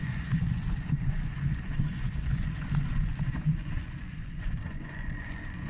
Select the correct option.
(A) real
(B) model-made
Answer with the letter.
B